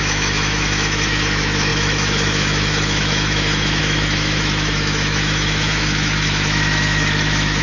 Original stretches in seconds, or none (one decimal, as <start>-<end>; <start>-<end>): none